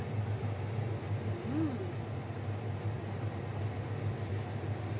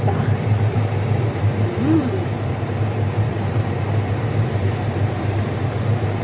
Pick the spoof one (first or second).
second